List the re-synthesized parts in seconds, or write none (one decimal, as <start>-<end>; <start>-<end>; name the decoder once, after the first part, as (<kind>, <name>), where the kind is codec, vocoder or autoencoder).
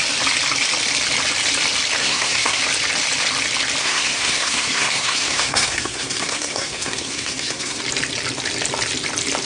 2.0-2.6 (codec, SNAC); 3.8-7.8